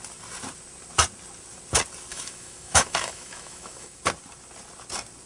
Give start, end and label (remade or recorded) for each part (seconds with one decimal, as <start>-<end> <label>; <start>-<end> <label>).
0.0-2.1 recorded; 2.1-4.0 remade; 4.0-5.3 recorded